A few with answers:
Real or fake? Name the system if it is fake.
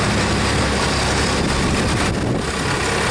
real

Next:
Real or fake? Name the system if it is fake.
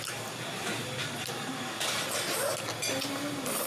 real